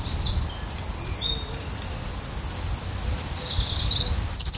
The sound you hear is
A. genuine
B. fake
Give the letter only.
A